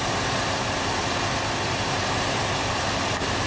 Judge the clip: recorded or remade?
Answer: recorded